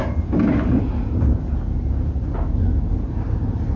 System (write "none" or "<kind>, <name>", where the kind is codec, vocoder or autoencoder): none